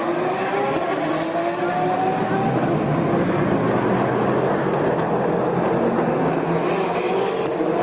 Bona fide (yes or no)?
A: yes